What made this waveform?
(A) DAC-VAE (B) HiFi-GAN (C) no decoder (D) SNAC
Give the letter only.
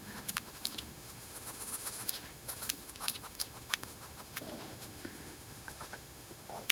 A